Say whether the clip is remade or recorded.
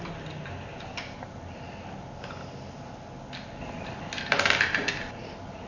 recorded